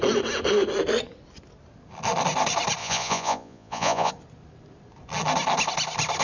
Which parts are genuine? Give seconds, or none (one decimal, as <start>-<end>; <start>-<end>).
0.0-2.8; 4.1-6.2